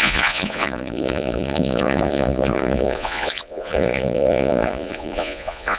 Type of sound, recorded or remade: remade